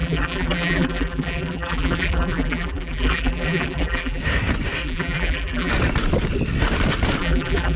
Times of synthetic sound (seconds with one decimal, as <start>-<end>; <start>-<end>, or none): 0.0-4.2; 4.8-5.7; 7.2-7.8